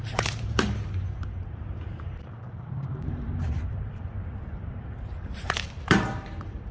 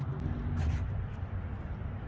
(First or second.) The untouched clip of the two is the second